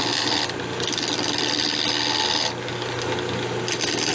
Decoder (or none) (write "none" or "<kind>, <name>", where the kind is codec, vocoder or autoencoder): none